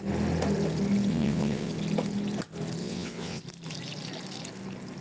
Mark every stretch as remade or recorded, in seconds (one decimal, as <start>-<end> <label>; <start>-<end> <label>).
0.0-1.1 recorded; 1.1-1.7 remade; 1.7-2.8 recorded; 2.8-3.4 remade; 3.4-5.0 recorded